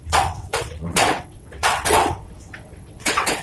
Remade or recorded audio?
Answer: remade